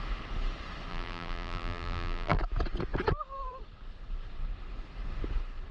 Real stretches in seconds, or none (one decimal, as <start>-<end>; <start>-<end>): 0.0-0.9; 2.4-5.7